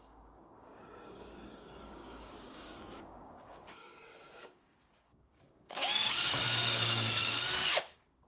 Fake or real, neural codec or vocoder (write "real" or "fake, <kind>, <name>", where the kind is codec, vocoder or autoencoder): fake, codec, DAC